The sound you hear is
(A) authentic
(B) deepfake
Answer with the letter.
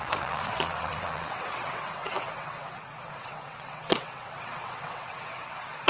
B